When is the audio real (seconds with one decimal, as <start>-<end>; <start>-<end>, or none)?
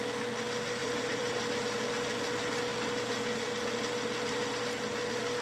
0.0-0.8; 1.5-5.4